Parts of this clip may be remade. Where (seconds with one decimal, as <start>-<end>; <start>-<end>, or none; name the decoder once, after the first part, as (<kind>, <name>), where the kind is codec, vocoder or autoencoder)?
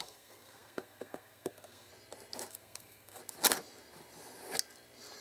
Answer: 0.0-1.9 (codec, SNAC); 2.5-3.2